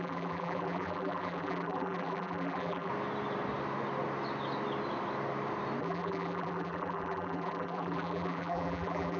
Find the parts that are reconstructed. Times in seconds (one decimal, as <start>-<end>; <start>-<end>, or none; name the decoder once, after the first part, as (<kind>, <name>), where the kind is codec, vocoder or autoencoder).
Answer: 0.0-2.9 (vocoder, BigVGAN v2); 5.8-9.2